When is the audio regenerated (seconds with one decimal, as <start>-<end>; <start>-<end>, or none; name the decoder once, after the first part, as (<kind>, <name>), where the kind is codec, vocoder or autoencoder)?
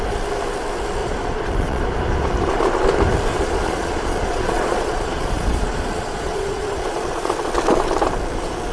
1.0-1.8 (vocoder, Vocos); 3.3-7.5